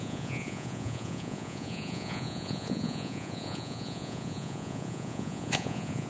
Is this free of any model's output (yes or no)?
no